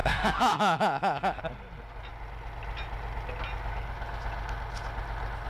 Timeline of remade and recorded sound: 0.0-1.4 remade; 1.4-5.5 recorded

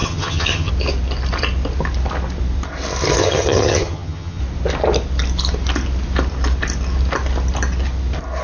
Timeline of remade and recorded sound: 0.0-0.7 remade; 0.7-3.2 recorded; 3.2-4.4 remade; 4.4-8.4 recorded

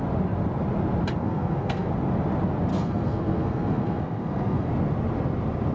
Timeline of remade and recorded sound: 0.0-1.2 recorded; 1.2-1.9 remade; 1.9-2.7 recorded; 2.7-4.7 remade; 4.7-5.7 recorded